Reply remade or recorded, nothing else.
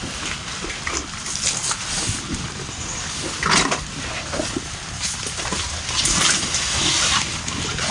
recorded